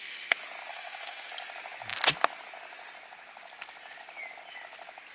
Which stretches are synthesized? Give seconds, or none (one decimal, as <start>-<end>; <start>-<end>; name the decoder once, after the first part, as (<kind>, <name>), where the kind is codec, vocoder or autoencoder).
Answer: 0.7-1.3 (autoencoder, DAC-VAE)